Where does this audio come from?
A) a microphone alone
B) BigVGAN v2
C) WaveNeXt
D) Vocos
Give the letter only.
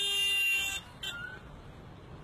A